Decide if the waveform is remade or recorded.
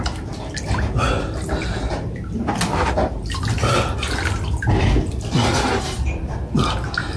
recorded